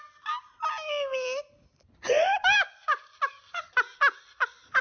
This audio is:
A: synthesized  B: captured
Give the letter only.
B